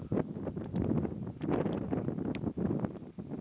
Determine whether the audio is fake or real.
real